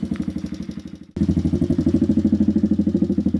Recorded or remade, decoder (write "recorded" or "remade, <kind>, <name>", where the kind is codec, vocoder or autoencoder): recorded